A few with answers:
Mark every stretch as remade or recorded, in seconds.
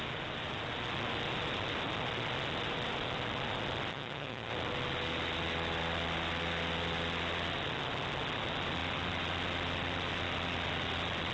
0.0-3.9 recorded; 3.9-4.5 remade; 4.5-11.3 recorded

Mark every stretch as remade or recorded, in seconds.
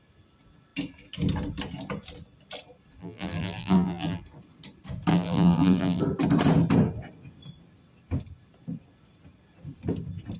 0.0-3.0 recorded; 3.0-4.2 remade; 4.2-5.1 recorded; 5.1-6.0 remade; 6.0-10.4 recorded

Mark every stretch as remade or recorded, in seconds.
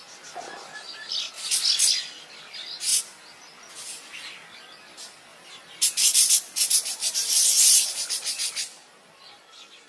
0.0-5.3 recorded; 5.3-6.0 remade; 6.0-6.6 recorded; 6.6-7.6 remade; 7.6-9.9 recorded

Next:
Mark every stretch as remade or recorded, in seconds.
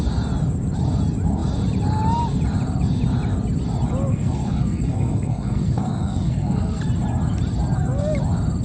0.0-4.1 recorded; 4.1-6.8 remade; 6.8-8.6 recorded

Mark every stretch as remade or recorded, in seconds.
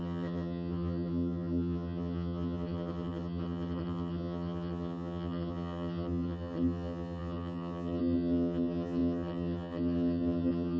0.0-10.8 remade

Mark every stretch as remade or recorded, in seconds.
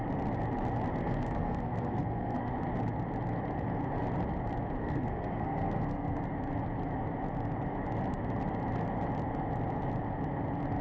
0.0-1.0 recorded; 1.0-2.5 remade; 2.5-4.8 recorded; 4.8-6.2 remade; 6.2-10.8 recorded